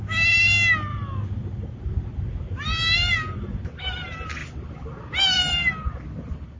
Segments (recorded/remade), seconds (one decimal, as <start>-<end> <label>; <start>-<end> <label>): 0.0-0.9 recorded; 0.9-3.8 remade; 3.8-4.4 recorded; 4.4-6.6 remade